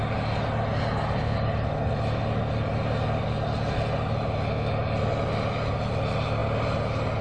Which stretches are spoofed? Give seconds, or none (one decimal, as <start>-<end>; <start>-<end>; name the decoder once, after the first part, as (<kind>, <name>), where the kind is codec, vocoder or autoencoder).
none